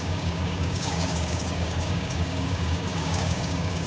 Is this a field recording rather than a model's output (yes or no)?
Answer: no